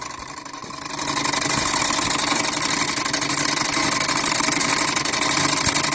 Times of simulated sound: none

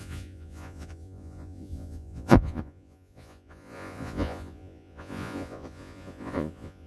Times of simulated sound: 0.0-6.9 (vocoder, Vocos)

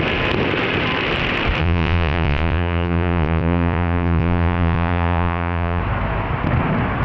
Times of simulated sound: 1.6-5.8 (vocoder, Vocos)

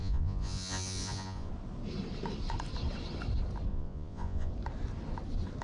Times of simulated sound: 0.0-1.5 (vocoder, Vocos); 3.7-4.5

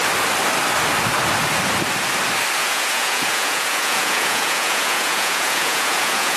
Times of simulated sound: 2.6-6.4 (vocoder, Vocos)

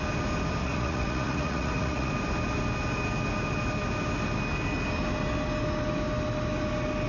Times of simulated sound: 0.6-2.1 (vocoder, Vocos)

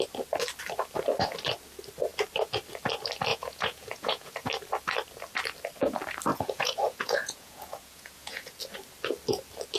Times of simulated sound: 3.3-4.5 (vocoder, Vocos); 6.3-8.6